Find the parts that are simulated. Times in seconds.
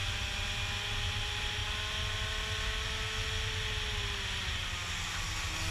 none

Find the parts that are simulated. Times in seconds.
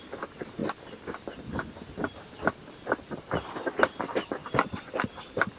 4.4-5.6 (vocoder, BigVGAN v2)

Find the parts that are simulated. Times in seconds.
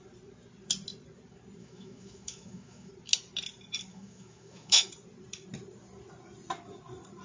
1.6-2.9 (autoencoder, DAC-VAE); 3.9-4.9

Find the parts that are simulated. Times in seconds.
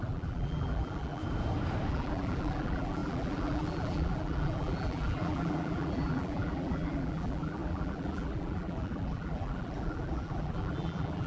0.0-1.2 (vocoder, BigVGAN v2); 1.9-11.3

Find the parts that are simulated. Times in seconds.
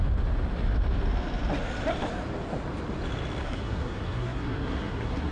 3.4-5.3 (codec, SNAC)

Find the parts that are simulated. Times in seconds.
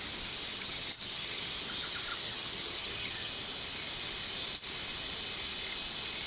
0.5-1.4 (vocoder, HiFi-GAN); 2.1-3.3